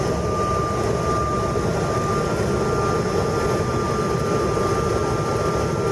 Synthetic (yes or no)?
no